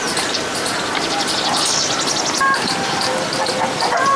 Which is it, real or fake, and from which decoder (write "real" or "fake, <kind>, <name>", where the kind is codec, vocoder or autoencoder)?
real